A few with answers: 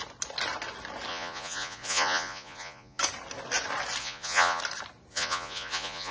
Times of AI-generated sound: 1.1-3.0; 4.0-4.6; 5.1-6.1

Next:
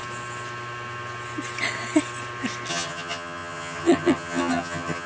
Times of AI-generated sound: 2.7-5.1

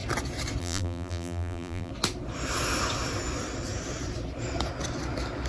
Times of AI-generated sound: 0.6-1.9

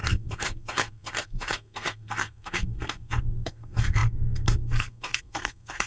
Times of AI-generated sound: 0.0-5.9